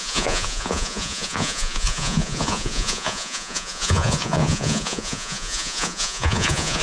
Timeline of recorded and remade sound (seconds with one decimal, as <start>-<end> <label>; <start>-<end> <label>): 0.0-6.8 remade